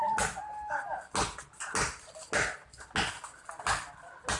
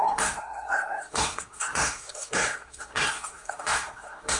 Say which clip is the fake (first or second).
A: second